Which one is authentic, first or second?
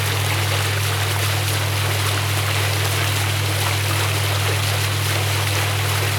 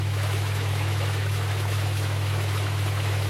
first